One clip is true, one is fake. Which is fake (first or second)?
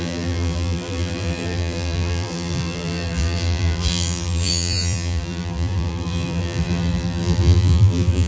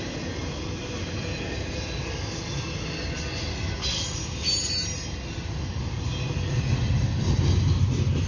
first